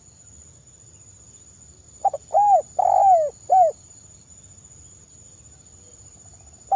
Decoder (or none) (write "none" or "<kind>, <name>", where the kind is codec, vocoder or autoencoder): none